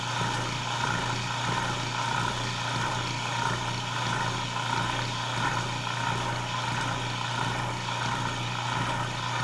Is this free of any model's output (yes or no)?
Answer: yes